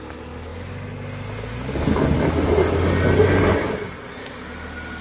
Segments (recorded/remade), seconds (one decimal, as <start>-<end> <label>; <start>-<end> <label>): 0.0-5.0 recorded